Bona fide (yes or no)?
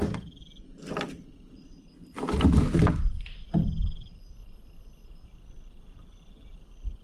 yes